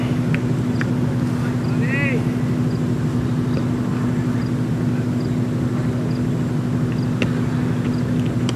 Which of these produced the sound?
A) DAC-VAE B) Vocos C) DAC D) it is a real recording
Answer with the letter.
D